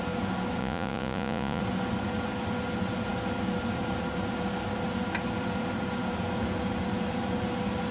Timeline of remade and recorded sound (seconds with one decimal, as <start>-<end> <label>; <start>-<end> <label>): 0.0-0.6 recorded; 0.6-1.6 remade; 1.6-7.9 recorded

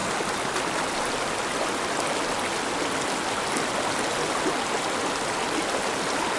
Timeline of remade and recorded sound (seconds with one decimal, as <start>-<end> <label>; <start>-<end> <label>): 0.0-6.4 recorded

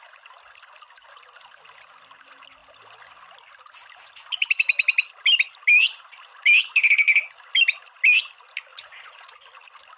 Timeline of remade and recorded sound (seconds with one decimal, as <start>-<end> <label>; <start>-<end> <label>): 0.0-8.7 recorded; 8.7-9.3 remade; 9.3-10.0 recorded

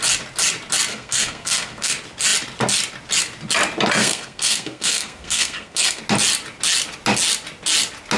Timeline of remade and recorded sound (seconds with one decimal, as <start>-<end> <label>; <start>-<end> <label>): 0.0-0.9 recorded; 0.9-1.9 remade; 1.9-4.0 recorded; 4.0-6.0 remade; 6.0-8.2 recorded

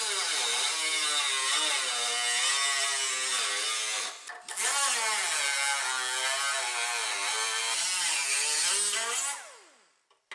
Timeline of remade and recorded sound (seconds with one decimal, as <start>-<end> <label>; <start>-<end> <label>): 0.0-7.0 recorded; 7.0-8.7 remade; 8.7-10.3 recorded

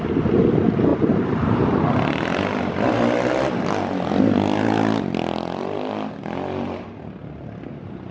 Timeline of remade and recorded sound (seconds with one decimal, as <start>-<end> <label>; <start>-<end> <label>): 0.0-0.9 recorded; 0.9-2.9 remade; 2.9-8.1 recorded

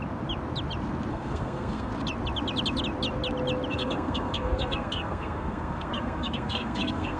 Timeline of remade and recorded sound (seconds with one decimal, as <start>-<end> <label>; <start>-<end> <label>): 0.0-1.1 recorded; 1.1-1.9 remade; 1.9-3.7 recorded; 3.7-7.2 remade